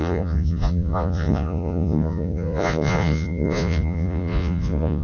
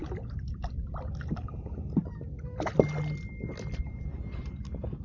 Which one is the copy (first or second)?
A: first